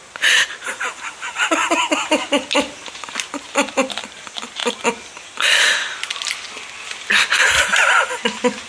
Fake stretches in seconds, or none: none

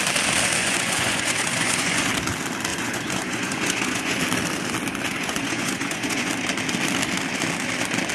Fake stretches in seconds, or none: 0.6-2.1 (vocoder, Vocos); 2.7-4.2; 5.1-6.3

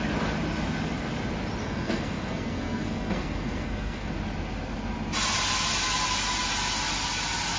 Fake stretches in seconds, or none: 1.6-4.1 (codec, SNAC)

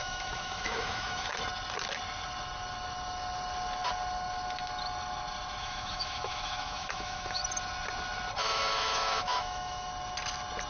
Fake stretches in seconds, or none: 0.0-1.3 (autoencoder, DAC-VAE); 5.6-7.4; 8.4-9.9